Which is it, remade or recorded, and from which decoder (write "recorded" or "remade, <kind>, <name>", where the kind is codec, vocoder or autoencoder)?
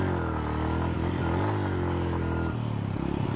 recorded